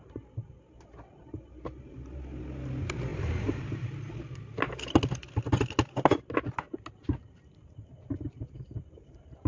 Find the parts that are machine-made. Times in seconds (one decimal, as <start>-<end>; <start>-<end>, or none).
3.1-3.9